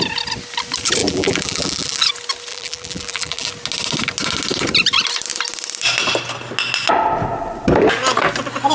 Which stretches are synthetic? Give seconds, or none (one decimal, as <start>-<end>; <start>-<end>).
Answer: 1.0-2.1; 2.5-3.5

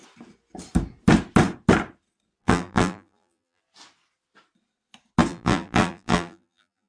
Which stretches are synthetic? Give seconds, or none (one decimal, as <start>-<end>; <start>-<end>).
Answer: 2.4-3.6; 5.3-6.9

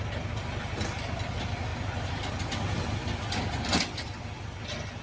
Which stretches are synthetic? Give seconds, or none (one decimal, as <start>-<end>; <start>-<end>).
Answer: none

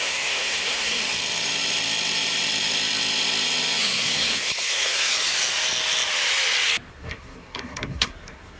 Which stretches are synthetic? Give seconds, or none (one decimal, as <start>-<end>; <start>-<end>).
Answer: 0.0-1.0; 3.8-5.1; 6.9-8.6

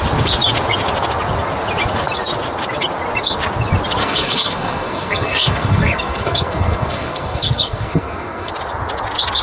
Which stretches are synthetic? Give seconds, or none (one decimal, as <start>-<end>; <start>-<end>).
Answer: 4.0-8.5

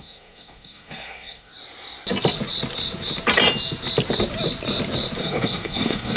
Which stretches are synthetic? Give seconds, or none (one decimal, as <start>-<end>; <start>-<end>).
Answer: 0.0-1.5; 5.2-6.2

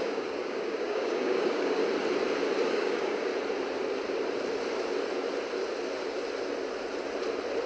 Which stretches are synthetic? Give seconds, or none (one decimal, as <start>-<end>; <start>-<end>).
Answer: 0.0-1.8; 2.7-3.3